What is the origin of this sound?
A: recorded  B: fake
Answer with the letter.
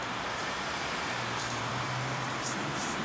B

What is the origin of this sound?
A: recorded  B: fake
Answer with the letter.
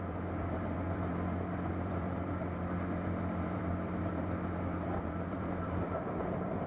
B